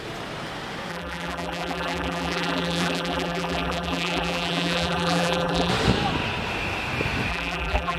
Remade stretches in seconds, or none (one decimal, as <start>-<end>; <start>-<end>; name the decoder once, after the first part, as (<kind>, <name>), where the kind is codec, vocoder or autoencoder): 0.9-5.7 (vocoder, BigVGAN v2); 7.3-8.0